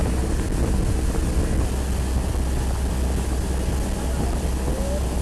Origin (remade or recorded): recorded